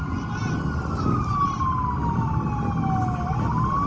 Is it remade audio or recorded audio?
recorded